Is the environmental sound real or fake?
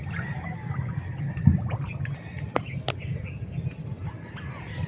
real